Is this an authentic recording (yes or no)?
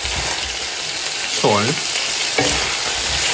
yes